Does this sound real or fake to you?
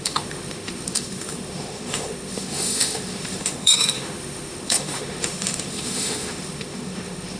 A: fake